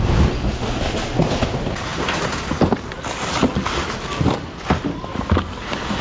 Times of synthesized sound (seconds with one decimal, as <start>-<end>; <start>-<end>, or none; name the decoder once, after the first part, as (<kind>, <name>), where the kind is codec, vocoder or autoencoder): none